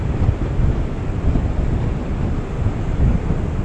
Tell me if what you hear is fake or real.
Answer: real